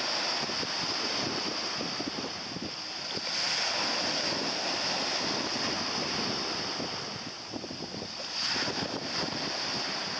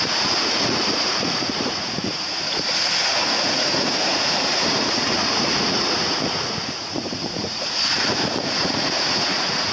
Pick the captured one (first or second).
first